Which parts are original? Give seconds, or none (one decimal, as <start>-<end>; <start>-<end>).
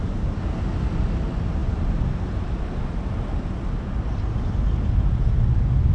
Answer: 0.0-5.9